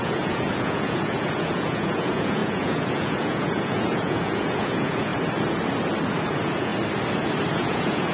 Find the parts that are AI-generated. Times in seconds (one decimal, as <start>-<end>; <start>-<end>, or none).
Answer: 0.0-5.1; 6.3-6.7; 7.5-8.1